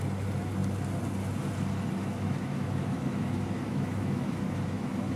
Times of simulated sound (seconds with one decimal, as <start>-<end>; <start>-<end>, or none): 2.0-5.2